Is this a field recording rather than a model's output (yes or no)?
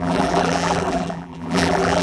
no